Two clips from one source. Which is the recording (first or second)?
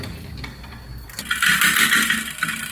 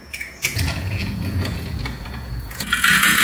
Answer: first